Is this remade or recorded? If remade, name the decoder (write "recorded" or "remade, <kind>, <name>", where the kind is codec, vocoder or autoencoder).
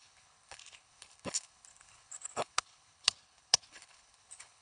remade, codec, HILCodec